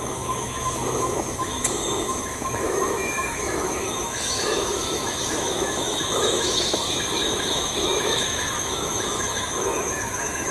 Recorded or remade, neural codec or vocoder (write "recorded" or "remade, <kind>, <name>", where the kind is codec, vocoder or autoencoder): remade, autoencoder, DAC-VAE